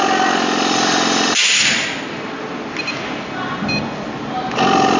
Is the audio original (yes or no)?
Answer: yes